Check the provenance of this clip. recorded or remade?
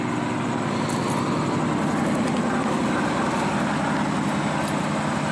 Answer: recorded